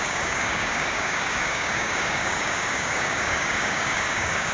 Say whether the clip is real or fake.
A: fake